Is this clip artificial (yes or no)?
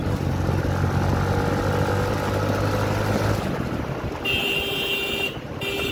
no